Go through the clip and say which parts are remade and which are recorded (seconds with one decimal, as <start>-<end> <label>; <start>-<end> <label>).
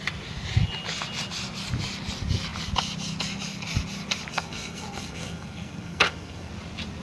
0.0-4.3 recorded; 4.3-6.5 remade; 6.5-7.0 recorded